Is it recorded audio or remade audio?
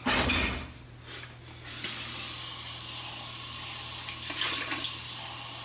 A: recorded